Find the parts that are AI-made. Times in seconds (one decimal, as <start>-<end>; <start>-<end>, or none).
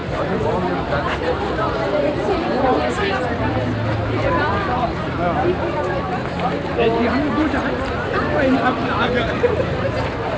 none